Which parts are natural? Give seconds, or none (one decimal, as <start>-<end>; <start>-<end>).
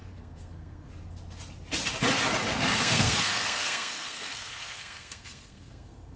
0.9-2.5